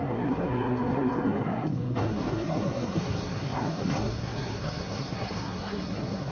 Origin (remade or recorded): remade